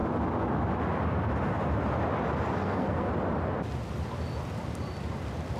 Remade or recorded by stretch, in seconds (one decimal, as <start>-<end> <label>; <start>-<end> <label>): 0.0-2.6 recorded; 2.6-3.1 remade; 3.1-5.6 recorded